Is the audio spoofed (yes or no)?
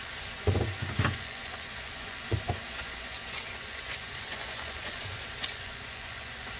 yes